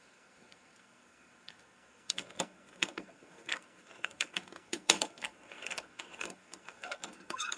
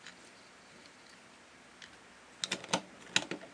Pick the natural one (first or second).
second